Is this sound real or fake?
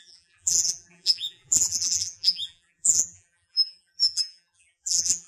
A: fake